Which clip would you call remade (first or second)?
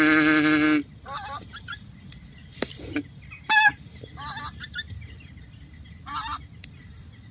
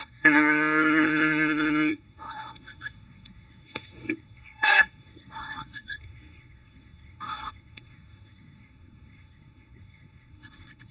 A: second